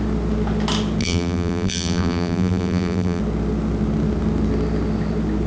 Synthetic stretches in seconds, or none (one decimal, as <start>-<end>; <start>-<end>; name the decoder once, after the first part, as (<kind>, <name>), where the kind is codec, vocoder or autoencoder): 1.0-3.2 (vocoder, BigVGAN v2)